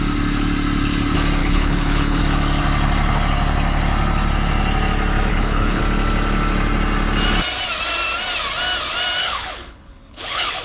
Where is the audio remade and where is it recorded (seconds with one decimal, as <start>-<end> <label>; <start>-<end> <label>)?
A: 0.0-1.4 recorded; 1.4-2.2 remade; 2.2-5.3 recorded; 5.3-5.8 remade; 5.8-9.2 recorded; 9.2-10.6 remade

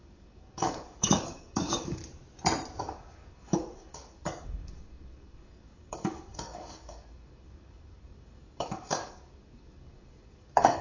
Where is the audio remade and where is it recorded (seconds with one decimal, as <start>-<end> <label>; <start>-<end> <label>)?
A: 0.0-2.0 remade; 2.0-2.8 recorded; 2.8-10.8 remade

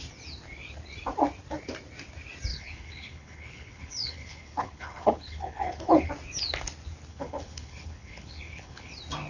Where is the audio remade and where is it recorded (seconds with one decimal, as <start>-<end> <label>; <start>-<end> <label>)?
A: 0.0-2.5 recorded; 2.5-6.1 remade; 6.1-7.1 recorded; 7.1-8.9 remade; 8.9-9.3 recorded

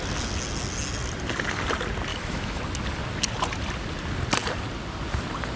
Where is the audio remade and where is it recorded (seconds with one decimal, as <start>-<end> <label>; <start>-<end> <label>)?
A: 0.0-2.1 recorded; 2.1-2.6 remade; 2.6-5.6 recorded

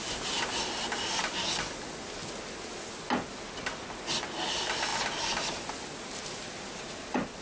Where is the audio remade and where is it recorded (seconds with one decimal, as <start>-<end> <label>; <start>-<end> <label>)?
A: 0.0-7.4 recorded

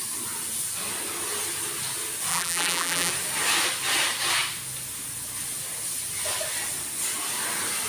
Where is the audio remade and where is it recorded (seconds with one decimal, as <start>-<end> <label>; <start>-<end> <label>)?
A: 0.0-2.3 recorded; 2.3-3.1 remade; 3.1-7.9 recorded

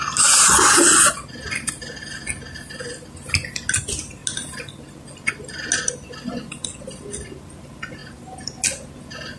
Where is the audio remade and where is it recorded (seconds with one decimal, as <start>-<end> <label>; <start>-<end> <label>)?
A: 0.0-9.4 recorded